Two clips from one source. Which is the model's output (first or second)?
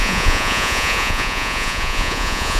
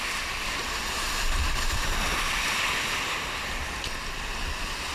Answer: first